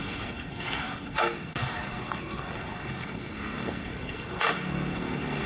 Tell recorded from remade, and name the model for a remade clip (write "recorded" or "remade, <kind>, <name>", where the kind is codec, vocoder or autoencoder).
remade, codec, SNAC